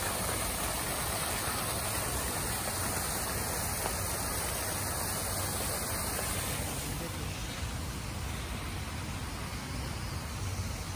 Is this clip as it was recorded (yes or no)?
yes